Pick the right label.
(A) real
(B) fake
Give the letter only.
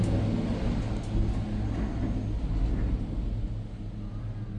A